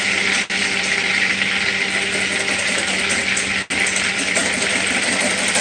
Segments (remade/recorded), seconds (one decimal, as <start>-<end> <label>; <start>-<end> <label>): 0.0-5.6 recorded